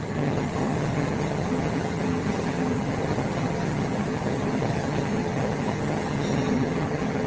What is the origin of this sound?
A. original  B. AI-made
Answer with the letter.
B